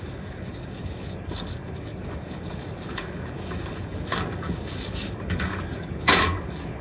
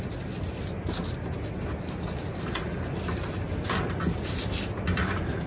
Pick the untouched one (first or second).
second